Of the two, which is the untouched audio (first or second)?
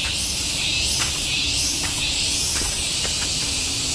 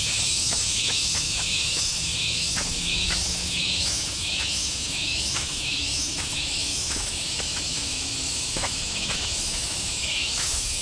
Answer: first